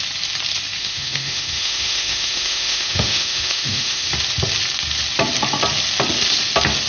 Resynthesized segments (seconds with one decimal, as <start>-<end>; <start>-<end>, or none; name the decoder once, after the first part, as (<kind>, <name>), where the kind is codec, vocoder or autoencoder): 0.8-4.1 (autoencoder, DAC-VAE)